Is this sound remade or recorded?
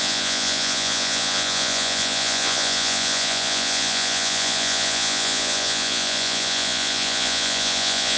remade